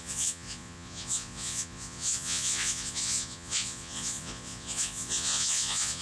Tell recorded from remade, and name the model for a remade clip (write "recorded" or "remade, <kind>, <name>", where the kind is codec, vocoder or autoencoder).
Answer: remade, vocoder, Vocos